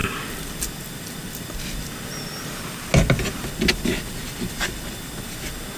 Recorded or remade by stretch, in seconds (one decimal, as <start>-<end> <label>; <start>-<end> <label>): 0.0-5.8 recorded